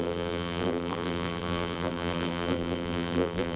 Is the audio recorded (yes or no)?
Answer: no